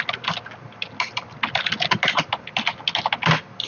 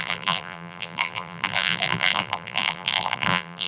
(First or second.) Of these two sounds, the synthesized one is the second